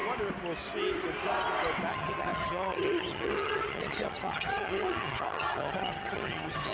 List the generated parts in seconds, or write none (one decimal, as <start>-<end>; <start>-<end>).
1.9-6.7